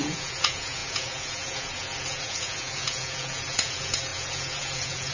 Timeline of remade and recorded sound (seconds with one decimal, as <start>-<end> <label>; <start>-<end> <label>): 0.0-5.1 remade